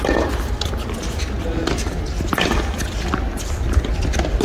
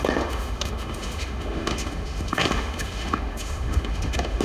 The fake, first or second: second